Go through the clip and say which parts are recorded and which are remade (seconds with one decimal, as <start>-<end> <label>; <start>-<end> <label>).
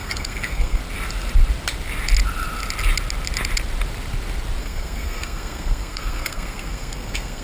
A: 0.0-0.8 remade; 0.8-4.6 recorded; 4.6-7.4 remade